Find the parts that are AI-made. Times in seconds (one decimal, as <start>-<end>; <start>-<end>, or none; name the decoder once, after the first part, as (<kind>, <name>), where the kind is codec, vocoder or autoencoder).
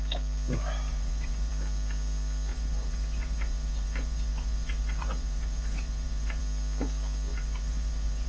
0.9-1.5 (vocoder, Vocos); 2.5-6.4; 7.3-8.3